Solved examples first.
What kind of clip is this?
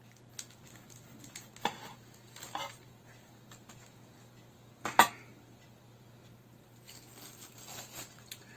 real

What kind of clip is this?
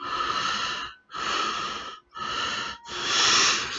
real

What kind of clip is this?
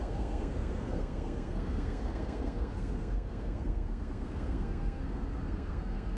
fake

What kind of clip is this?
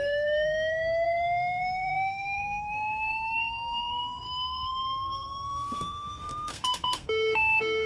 fake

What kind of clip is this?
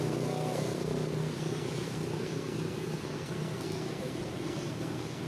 fake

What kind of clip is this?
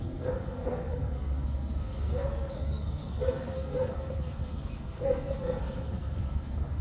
fake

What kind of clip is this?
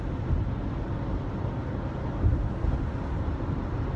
real